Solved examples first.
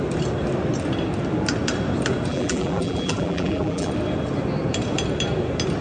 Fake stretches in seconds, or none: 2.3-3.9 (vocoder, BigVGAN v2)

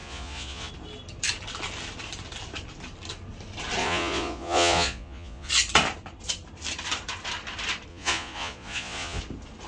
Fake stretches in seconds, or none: 0.0-0.7 (vocoder, Vocos); 3.8-5.5; 7.9-9.2

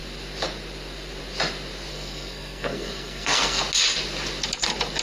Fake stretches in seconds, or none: 1.9-3.6 (codec, SNAC)

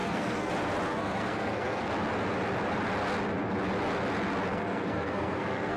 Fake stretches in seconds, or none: 0.0-0.5 (codec, SNAC); 0.9-1.9; 4.5-5.8

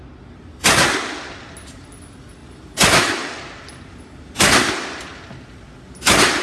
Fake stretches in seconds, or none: none

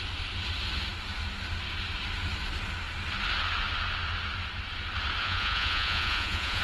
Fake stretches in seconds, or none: 5.2-6.6 (vocoder, Vocos)

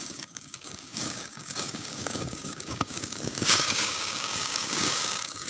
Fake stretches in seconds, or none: 0.0-5.5 (codec, DAC)

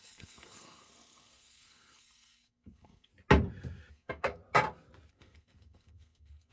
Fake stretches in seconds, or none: 0.0-3.1 (codec, SNAC); 3.9-4.4; 5.1-6.5